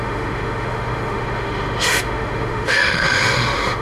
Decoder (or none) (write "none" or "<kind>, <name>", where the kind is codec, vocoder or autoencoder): autoencoder, DAC-VAE